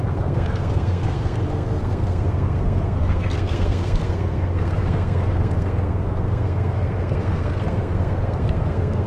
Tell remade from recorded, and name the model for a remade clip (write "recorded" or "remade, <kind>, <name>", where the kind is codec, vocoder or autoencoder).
remade, codec, SNAC